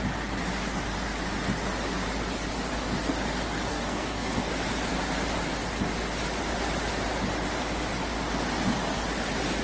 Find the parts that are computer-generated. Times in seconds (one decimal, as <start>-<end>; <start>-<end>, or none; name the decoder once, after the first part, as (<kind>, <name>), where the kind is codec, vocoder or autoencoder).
3.7-4.5 (codec, SNAC)